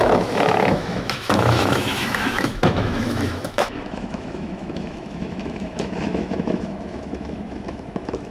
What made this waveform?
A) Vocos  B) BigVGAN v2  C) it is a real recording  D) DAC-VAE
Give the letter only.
D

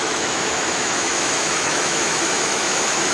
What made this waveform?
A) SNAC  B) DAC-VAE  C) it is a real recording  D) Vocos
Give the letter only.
B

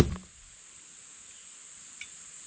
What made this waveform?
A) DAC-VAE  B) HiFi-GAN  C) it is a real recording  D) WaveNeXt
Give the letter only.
C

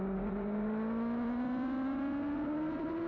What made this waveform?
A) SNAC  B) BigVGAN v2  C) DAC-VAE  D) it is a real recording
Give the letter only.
D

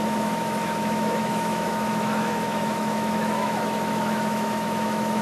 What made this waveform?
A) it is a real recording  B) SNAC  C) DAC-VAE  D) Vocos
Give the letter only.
C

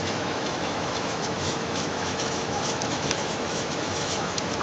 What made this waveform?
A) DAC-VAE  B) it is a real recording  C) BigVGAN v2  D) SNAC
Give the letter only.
A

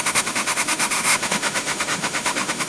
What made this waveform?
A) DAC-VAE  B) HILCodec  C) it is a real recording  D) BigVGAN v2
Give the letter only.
A